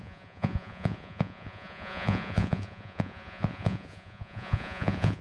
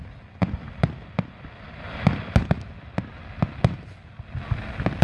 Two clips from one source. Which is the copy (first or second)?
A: first